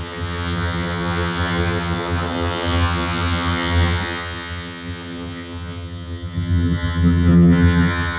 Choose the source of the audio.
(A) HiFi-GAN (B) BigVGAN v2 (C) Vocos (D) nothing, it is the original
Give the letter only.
A